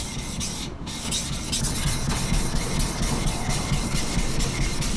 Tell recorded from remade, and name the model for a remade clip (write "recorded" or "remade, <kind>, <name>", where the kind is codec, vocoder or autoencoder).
recorded